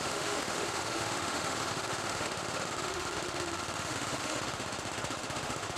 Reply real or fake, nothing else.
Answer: fake